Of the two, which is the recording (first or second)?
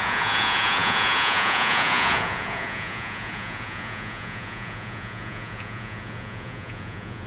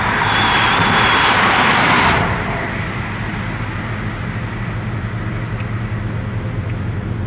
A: second